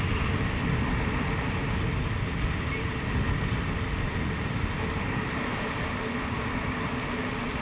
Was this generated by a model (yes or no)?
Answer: no